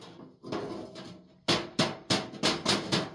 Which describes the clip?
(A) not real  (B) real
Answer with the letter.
B